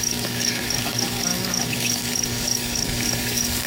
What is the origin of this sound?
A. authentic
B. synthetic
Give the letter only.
B